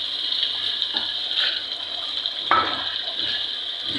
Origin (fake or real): real